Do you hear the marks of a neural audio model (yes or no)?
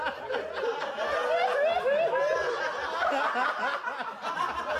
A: no